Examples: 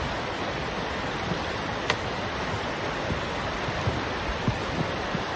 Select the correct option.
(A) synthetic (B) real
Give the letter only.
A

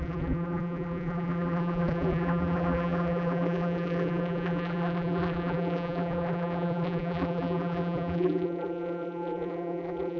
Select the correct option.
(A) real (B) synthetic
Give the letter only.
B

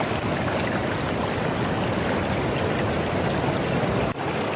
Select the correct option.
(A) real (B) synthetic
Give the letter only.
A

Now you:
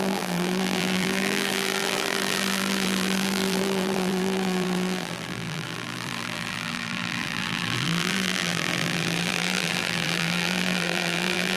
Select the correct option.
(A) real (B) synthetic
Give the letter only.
B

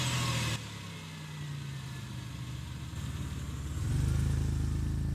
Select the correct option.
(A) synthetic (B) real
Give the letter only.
B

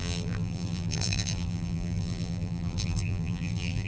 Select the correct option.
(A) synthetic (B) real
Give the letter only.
A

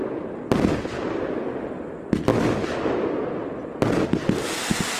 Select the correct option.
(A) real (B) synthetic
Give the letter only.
A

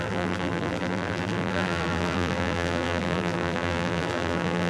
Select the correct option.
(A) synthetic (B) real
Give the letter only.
A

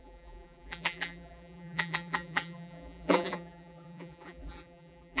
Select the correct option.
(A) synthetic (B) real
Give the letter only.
A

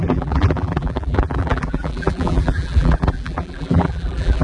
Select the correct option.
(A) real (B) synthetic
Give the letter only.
B